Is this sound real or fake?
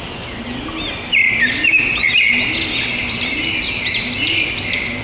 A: real